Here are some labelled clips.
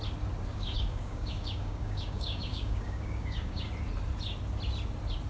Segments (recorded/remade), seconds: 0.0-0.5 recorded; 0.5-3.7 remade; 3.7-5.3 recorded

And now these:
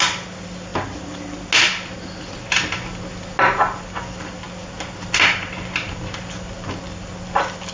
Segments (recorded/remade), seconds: 0.0-7.7 recorded

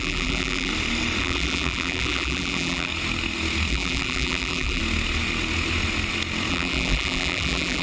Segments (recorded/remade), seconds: 0.0-0.7 remade; 0.7-1.2 recorded; 1.2-2.9 remade; 2.9-3.7 recorded; 3.7-4.8 remade; 4.8-6.5 recorded; 6.5-7.8 remade

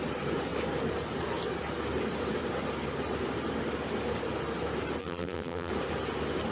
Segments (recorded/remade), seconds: 0.0-5.0 recorded; 5.0-5.7 remade; 5.7-6.5 recorded

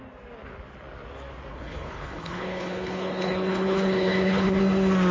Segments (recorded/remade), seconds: 0.0-1.5 recorded; 1.5-4.6 remade; 4.6-5.1 recorded

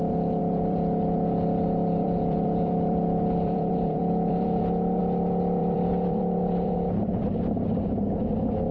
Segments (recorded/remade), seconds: 0.0-0.4 recorded; 0.4-5.0 remade; 5.0-5.6 recorded; 5.6-7.2 remade; 7.2-8.7 recorded